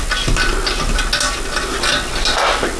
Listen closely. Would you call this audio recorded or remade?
recorded